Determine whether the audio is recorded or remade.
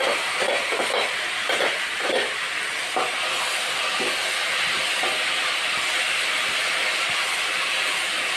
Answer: recorded